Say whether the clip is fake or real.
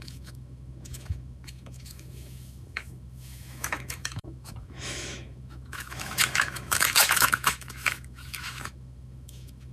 fake